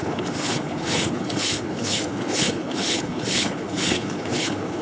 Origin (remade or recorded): remade